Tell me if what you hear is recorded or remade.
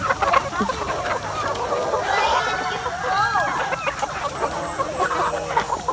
recorded